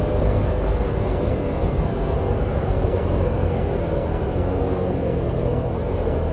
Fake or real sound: fake